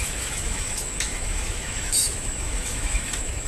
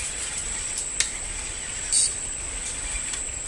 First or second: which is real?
second